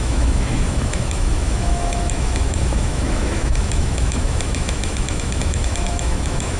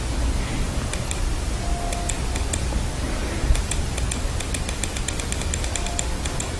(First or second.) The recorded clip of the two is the second